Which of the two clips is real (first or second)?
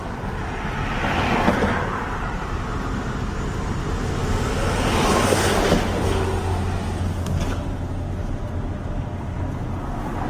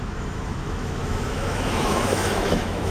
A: first